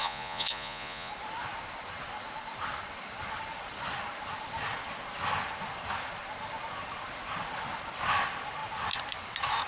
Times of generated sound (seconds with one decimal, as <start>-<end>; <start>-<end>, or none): 0.0-1.1